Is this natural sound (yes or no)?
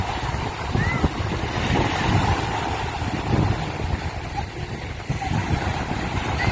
yes